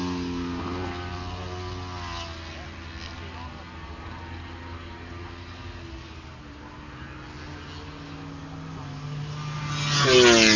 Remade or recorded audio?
recorded